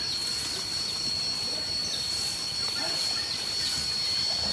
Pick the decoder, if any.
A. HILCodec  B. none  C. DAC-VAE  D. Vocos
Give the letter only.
B